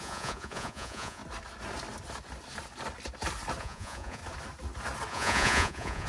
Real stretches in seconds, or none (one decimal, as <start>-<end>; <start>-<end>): 1.2-3.6; 4.2-5.1